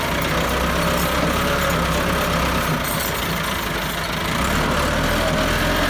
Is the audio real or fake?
real